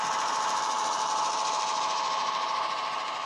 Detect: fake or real fake